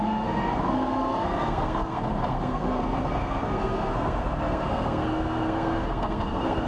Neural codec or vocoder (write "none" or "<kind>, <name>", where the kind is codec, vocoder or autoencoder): codec, SNAC